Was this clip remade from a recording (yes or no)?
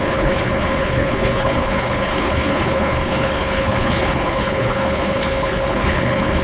yes